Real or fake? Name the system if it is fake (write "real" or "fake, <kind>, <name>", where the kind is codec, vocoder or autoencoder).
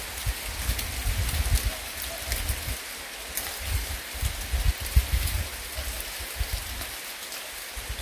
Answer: real